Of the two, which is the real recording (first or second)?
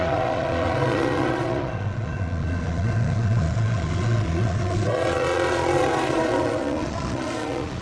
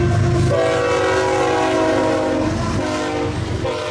second